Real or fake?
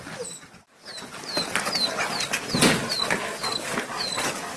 real